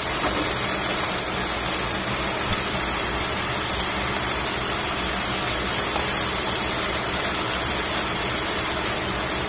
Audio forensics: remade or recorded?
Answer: recorded